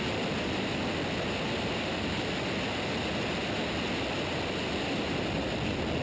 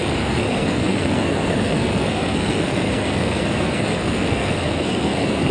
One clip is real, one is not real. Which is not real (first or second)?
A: second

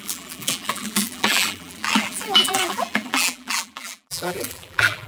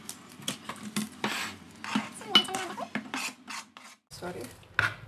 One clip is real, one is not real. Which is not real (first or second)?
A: first